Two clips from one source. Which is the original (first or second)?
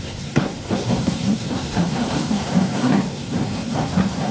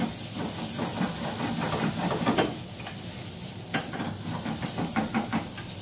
second